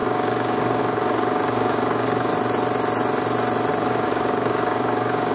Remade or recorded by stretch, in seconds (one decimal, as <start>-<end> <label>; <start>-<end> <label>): 0.0-2.3 remade; 2.3-3.7 recorded; 3.7-5.3 remade